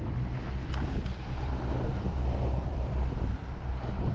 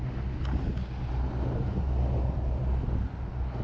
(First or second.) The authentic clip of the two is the second